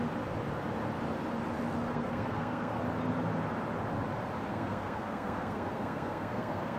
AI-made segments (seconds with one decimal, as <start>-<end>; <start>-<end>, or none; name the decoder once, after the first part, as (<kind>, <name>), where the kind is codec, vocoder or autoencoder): 1.9-2.8 (codec, SNAC); 4.5-6.8